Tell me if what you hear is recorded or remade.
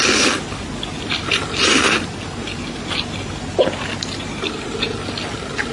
recorded